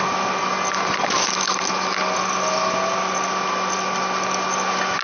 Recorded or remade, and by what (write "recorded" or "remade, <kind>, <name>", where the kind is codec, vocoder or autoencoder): recorded